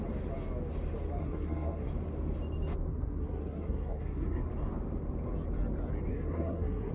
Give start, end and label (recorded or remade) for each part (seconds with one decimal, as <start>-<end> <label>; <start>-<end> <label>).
0.0-1.2 recorded; 1.2-1.9 remade; 1.9-2.9 recorded; 2.9-4.5 remade; 4.5-6.1 recorded; 6.1-6.9 remade